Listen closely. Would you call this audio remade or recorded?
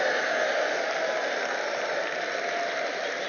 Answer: recorded